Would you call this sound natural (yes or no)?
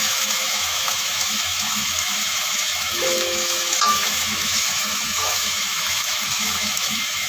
no